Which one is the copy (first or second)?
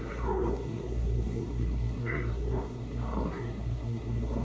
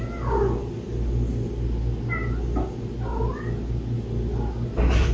first